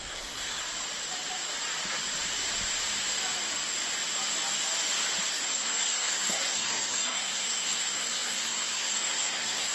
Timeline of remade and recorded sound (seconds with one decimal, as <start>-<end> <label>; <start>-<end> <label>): 0.0-0.6 remade; 0.6-5.3 recorded; 5.3-9.7 remade